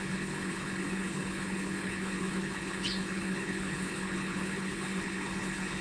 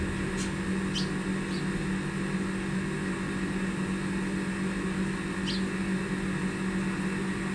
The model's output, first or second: first